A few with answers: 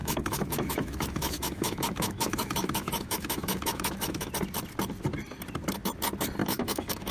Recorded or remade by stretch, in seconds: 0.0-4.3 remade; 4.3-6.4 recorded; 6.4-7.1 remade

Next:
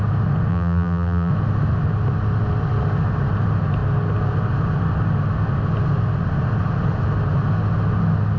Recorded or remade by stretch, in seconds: 0.0-0.5 recorded; 0.5-1.3 remade; 1.3-8.4 recorded